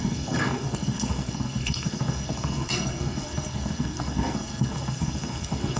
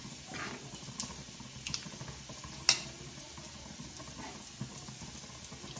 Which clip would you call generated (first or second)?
first